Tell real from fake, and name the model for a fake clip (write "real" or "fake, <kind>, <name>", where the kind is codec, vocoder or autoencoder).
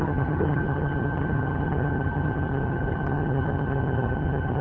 fake, vocoder, HiFi-GAN